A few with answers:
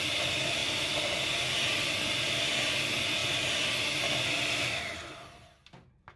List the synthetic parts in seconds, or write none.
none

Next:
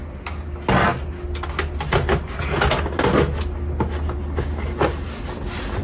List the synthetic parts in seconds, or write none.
none

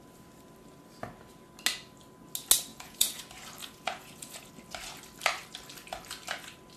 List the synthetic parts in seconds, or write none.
2.7-3.2 (vocoder, Vocos); 3.6-4.5